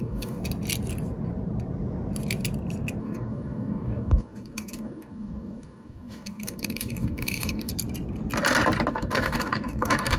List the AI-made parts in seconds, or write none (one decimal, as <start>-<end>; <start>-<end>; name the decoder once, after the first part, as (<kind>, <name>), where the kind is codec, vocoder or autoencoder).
0.0-0.4 (codec, DAC); 3.0-7.7; 8.9-10.2